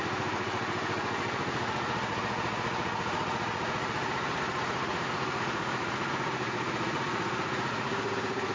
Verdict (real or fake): fake